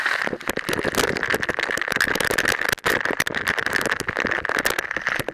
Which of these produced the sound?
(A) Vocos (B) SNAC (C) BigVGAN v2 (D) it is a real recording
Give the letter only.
D